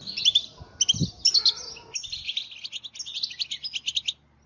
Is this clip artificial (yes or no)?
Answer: no